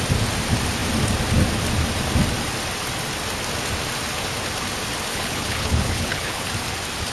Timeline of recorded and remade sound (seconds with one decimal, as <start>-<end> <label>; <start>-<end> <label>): 0.0-5.1 recorded; 5.1-6.5 remade; 6.5-7.1 recorded